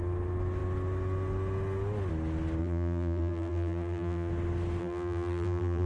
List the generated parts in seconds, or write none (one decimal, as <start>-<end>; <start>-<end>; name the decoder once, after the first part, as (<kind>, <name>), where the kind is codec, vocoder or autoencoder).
2.6-4.3 (vocoder, BigVGAN v2); 4.8-5.9